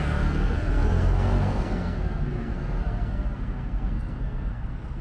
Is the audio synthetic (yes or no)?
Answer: yes